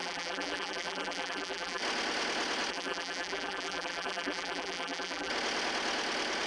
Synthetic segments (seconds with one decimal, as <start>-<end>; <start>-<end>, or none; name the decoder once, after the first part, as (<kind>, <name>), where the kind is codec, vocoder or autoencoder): 0.0-1.8 (vocoder, BigVGAN v2); 2.7-5.3